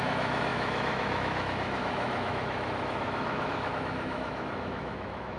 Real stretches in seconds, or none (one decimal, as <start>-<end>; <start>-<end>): none